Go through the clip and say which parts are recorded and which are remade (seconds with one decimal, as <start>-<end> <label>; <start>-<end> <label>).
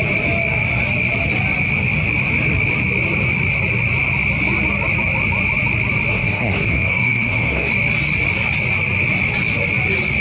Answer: 0.0-6.1 recorded; 6.1-7.7 remade; 7.7-10.2 recorded